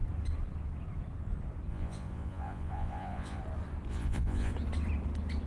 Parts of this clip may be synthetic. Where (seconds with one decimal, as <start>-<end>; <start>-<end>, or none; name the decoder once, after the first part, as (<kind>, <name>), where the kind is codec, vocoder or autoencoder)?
1.7-3.4 (vocoder, Vocos); 3.9-4.5